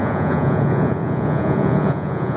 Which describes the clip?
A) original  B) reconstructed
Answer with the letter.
B